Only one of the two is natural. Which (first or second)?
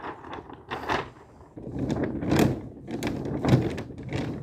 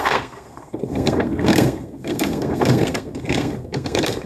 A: first